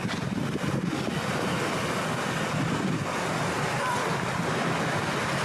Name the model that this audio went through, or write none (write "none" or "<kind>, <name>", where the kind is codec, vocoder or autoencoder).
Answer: none